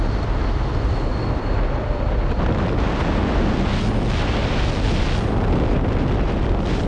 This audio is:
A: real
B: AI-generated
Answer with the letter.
A